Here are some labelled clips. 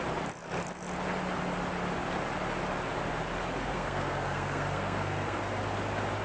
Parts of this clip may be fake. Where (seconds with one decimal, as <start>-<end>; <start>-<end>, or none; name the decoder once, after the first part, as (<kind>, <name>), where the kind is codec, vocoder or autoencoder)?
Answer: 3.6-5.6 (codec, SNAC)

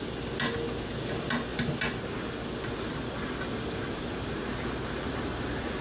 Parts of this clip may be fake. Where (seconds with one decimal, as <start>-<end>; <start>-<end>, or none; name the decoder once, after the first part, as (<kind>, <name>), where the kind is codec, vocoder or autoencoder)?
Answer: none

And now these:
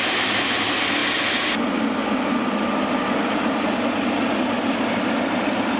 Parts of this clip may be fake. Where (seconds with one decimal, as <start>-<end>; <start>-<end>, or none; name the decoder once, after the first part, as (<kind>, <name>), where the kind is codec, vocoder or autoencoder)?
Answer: none

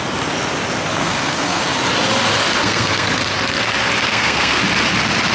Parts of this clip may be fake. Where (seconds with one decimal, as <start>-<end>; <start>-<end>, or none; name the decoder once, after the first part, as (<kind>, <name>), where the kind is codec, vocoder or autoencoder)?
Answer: 1.0-1.6 (codec, SNAC); 2.6-3.1; 4.1-4.6

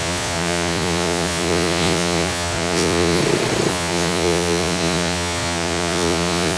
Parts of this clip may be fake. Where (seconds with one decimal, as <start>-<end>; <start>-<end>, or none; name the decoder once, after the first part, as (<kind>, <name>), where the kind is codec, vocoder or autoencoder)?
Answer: 0.0-3.2 (vocoder, Vocos); 3.7-6.6